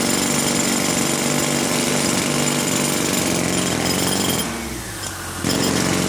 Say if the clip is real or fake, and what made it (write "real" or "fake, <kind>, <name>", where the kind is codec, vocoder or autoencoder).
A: real